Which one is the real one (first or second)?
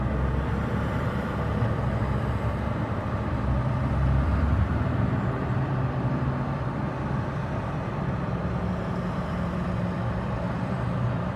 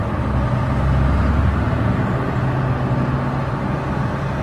second